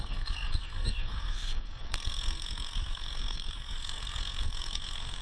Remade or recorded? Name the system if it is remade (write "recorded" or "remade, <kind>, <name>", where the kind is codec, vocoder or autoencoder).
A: remade, codec, SNAC